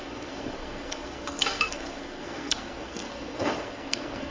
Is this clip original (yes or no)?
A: no